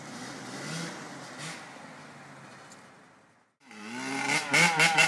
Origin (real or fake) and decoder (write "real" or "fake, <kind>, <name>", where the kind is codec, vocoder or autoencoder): real